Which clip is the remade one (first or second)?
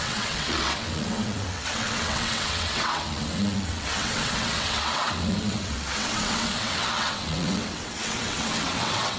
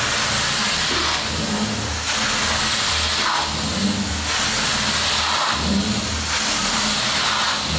first